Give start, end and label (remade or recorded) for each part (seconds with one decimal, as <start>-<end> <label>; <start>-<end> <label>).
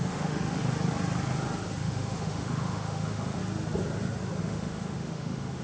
0.0-0.6 remade; 0.6-1.8 recorded; 1.8-3.4 remade; 3.4-4.4 recorded; 4.4-5.6 remade